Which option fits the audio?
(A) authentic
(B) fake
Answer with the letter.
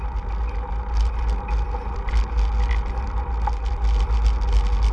A